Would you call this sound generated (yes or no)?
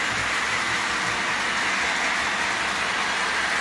no